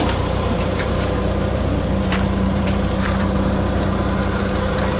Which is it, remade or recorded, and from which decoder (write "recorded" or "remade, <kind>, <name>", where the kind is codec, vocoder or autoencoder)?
remade, vocoder, BigVGAN v2